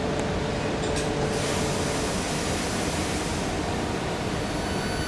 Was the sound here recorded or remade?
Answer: recorded